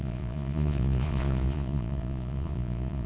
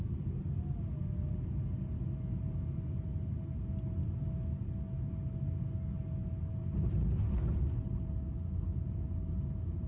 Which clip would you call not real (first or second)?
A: first